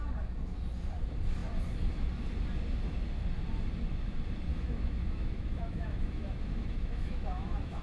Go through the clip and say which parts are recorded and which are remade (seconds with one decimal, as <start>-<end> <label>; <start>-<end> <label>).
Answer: 0.0-4.5 recorded; 4.5-7.8 remade